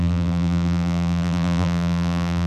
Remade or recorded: remade